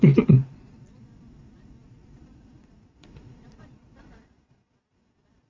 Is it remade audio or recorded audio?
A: remade